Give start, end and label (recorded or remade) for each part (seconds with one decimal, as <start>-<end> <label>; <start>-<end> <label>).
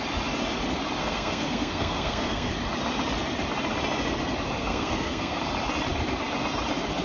0.0-1.0 recorded; 1.0-2.5 remade; 2.5-4.6 recorded; 4.6-5.4 remade; 5.4-7.0 recorded